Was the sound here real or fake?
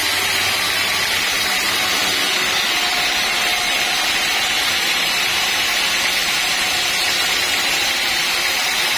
real